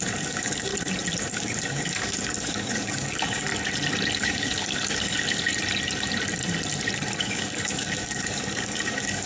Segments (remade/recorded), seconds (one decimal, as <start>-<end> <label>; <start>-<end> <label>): 0.0-0.7 remade; 0.7-1.2 recorded; 1.2-3.5 remade; 3.5-4.2 recorded; 4.2-5.5 remade; 5.5-7.2 recorded; 7.2-9.3 remade